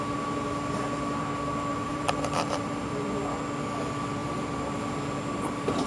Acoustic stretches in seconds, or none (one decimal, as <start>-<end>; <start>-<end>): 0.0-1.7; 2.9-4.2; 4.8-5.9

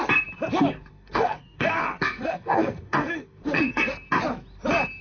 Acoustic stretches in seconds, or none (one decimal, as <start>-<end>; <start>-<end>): 0.0-0.9; 3.9-5.0

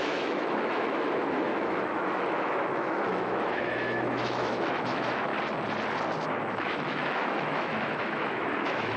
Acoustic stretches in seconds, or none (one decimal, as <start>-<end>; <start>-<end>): 5.3-6.5